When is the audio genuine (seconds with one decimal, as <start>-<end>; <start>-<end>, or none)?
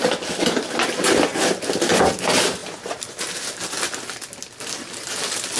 0.0-2.6; 3.2-5.6